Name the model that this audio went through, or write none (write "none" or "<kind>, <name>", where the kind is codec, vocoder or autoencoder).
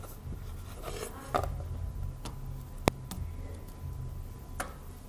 none